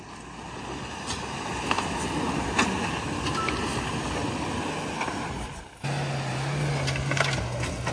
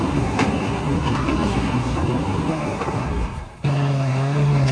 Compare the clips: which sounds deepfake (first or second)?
second